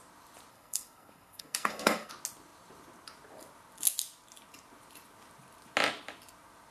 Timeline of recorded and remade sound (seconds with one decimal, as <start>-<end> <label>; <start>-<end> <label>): 0.0-0.5 recorded; 0.5-2.1 remade; 2.1-6.7 recorded